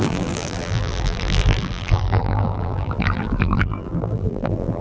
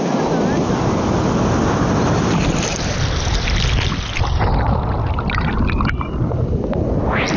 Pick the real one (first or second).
second